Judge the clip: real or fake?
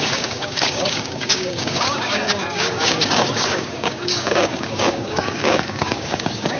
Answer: fake